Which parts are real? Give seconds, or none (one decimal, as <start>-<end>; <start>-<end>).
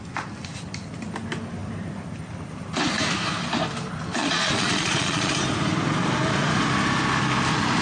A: 0.0-4.2; 5.3-7.8